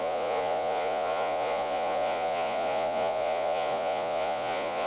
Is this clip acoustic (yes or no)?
no